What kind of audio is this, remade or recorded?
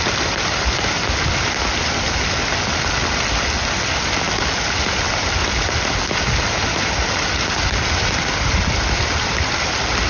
recorded